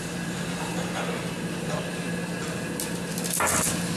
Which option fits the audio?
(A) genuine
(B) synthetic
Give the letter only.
A